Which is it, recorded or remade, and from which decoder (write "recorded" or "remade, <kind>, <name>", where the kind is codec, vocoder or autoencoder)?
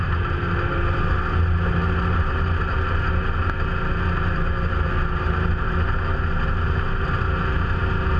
recorded